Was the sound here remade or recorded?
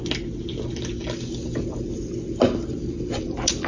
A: recorded